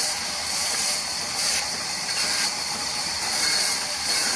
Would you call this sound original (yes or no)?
no